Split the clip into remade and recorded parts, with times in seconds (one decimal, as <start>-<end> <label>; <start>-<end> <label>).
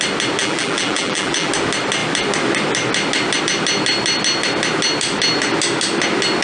0.0-0.4 recorded; 0.4-1.5 remade; 1.5-6.4 recorded